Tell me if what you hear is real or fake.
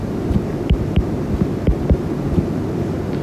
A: real